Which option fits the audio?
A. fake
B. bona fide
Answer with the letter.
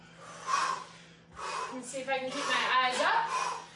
B